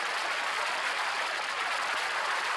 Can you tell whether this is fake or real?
real